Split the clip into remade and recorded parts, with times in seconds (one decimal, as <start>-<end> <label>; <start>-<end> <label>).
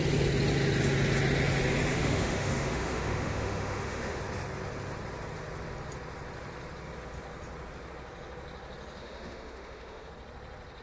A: 0.0-1.9 recorded; 1.9-4.2 remade; 4.2-9.0 recorded; 9.0-10.1 remade; 10.1-10.8 recorded